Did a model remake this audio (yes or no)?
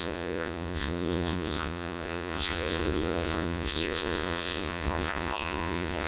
yes